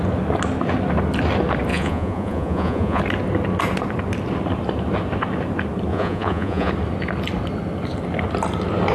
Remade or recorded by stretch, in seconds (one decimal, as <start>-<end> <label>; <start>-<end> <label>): 0.0-1.7 recorded; 1.7-3.0 remade; 3.0-5.9 recorded; 5.9-6.7 remade; 6.7-8.9 recorded